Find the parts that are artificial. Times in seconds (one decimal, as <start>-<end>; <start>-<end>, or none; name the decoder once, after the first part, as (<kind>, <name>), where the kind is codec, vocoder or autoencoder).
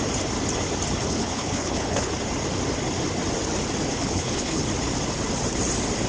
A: 1.0-2.1 (codec, HILCodec); 3.9-4.6